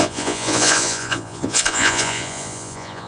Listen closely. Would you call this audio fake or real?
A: fake